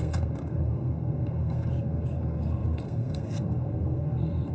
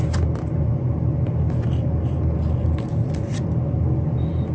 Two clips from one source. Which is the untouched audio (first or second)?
second